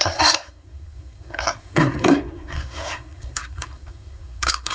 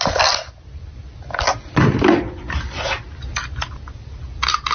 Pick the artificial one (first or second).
first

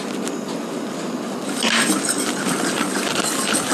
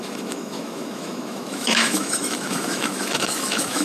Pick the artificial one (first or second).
second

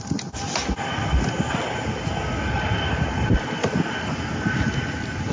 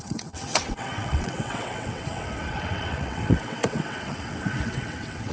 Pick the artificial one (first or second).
second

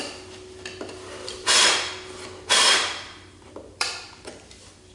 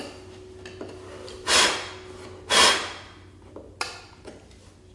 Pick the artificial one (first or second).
first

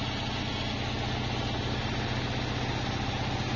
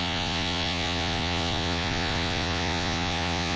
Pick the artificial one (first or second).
second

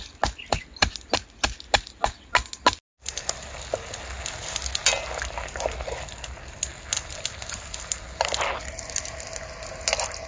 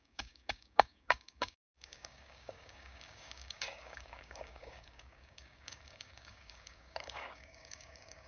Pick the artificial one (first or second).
second